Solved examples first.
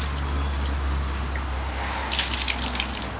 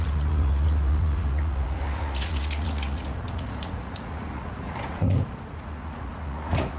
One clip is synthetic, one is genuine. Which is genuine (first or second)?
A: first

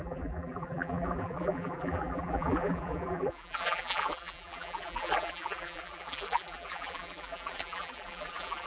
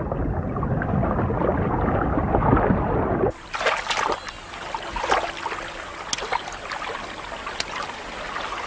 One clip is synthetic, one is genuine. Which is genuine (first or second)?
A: second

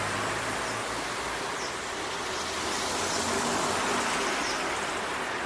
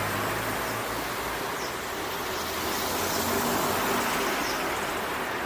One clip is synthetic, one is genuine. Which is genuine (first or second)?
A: second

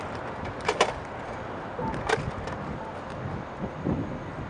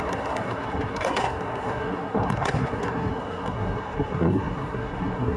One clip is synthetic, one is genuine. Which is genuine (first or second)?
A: first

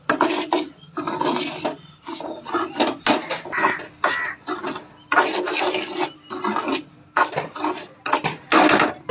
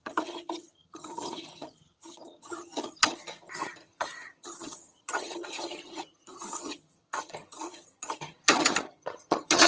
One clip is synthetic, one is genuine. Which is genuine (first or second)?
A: first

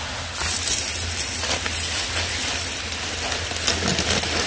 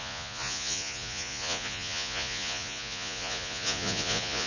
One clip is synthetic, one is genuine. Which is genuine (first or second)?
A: first